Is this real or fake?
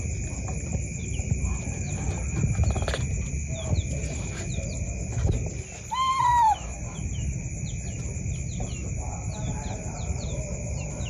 real